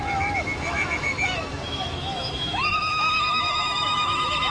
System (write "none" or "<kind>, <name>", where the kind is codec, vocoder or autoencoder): autoencoder, DAC-VAE